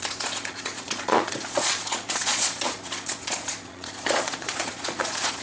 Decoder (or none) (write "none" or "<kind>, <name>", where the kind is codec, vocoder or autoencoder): vocoder, Vocos